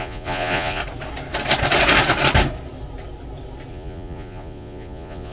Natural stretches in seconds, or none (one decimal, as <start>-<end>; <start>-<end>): 0.8-3.7